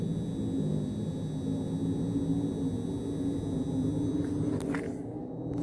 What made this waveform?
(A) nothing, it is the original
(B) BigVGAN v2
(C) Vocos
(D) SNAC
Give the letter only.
A